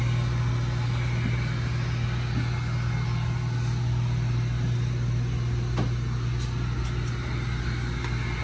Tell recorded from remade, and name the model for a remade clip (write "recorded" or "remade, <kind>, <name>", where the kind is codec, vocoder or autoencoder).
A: recorded